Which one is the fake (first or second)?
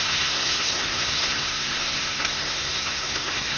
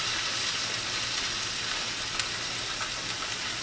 first